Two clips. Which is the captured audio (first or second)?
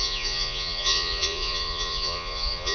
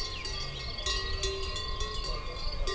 second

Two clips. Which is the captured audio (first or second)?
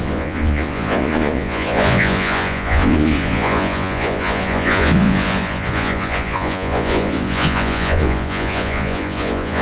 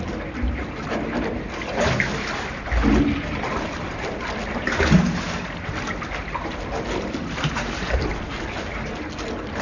second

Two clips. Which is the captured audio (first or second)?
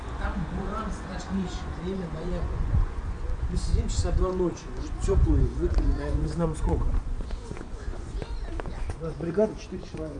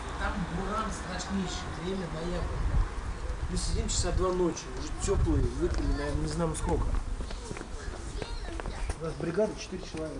second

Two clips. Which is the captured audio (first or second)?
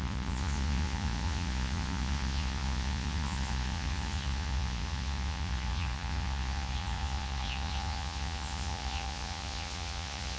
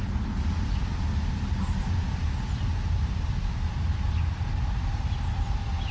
second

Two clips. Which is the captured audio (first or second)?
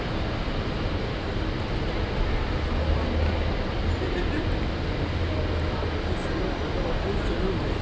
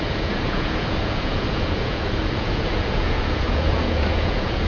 first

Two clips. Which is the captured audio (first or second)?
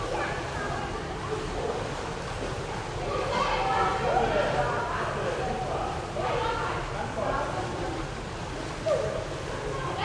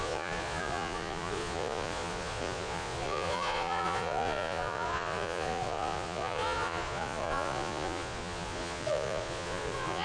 first